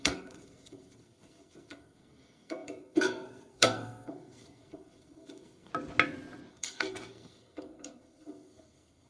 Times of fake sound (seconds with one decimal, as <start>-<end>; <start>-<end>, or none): 0.0-5.7; 6.5-9.1